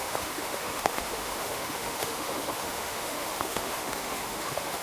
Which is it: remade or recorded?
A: remade